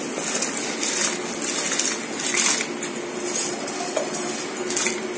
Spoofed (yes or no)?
no